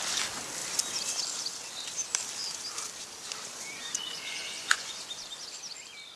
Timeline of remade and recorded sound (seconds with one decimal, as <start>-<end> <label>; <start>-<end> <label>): 0.0-3.5 recorded; 3.5-4.9 remade; 4.9-6.2 recorded